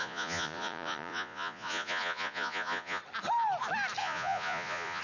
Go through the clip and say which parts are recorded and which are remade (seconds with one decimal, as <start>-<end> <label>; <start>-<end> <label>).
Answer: 0.0-3.0 remade; 3.0-4.0 recorded; 4.0-5.0 remade